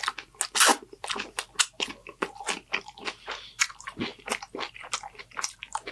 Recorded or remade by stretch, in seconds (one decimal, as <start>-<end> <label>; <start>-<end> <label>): 0.0-5.9 recorded